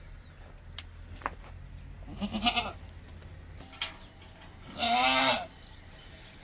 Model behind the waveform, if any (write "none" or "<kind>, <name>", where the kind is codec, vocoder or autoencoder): none